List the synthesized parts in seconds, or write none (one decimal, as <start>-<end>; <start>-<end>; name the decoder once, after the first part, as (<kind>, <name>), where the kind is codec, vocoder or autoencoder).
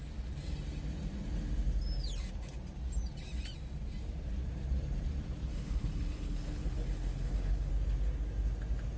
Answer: 5.5-7.7 (codec, HILCodec)